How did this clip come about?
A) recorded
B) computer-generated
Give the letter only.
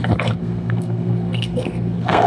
B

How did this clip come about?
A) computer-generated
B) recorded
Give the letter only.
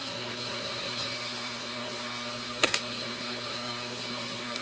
A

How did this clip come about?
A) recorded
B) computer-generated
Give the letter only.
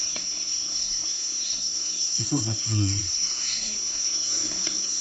B